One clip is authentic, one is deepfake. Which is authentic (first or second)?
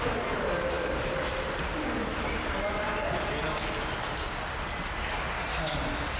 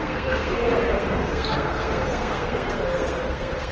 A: first